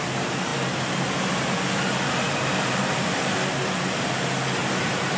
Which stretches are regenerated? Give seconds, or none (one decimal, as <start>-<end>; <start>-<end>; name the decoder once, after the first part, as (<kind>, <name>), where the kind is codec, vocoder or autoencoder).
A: none